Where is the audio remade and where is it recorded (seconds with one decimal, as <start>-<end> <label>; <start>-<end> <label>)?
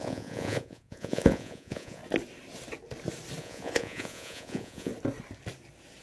0.0-2.0 remade; 2.0-3.4 recorded; 3.4-4.9 remade; 4.9-6.0 recorded